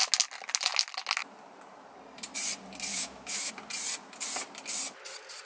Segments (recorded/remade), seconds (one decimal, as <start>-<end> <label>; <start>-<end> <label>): 0.0-2.9 recorded; 2.9-3.5 remade; 3.5-5.5 recorded